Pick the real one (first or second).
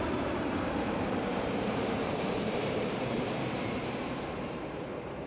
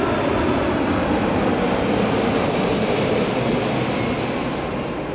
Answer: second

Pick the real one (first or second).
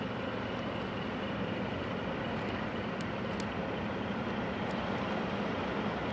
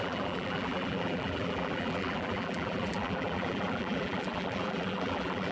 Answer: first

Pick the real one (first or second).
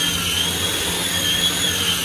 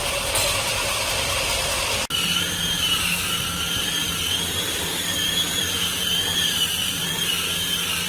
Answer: first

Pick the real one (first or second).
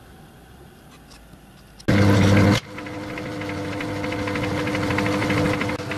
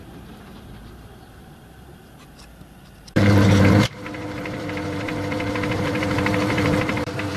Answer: first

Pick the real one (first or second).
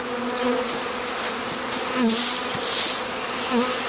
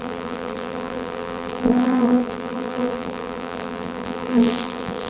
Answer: first